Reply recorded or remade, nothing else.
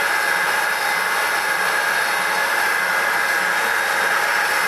recorded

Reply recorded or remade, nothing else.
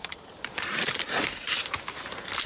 remade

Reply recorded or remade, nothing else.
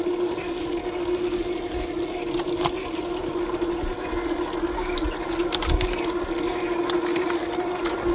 recorded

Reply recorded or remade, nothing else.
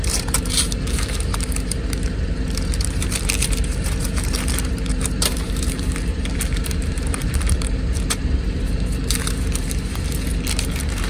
remade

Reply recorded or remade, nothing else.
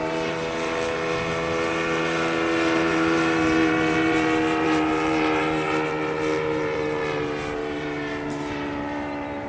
remade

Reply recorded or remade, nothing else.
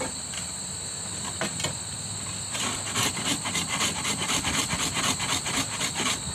recorded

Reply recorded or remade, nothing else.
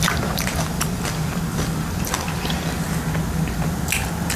recorded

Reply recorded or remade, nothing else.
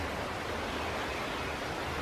recorded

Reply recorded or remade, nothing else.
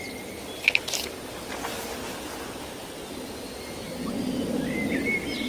recorded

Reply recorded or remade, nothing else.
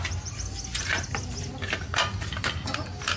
recorded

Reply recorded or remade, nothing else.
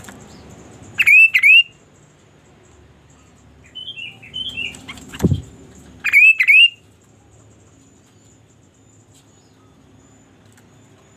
recorded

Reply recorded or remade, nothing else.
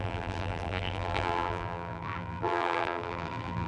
remade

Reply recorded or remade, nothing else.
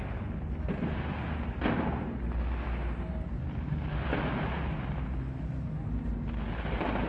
recorded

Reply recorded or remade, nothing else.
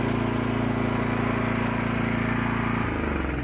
recorded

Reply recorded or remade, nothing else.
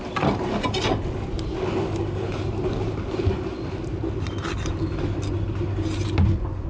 recorded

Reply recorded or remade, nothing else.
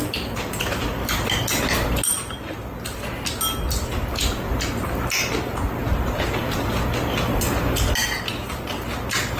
recorded